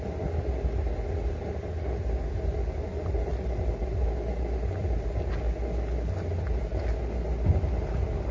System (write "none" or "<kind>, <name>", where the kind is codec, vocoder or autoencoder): none